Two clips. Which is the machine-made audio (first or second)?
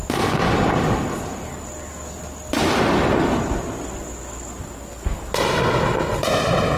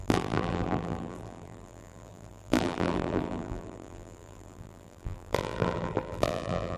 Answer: second